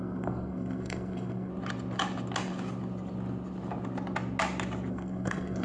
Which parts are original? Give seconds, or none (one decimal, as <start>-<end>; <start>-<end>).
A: 1.5-4.9